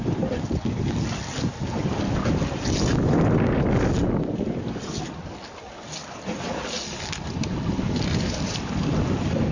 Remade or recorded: recorded